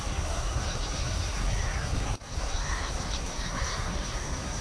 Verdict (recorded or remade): remade